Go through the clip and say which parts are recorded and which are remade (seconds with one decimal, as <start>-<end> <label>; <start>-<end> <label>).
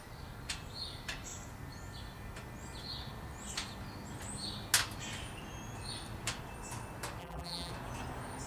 0.0-7.2 recorded; 7.2-7.7 remade; 7.7-8.5 recorded